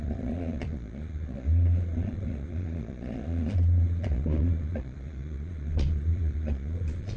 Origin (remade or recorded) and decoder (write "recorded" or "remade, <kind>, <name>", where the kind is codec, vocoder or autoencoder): remade, vocoder, Vocos